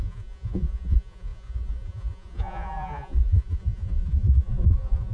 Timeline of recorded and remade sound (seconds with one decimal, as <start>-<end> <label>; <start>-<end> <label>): 0.0-5.1 remade